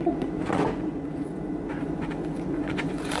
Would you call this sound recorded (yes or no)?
no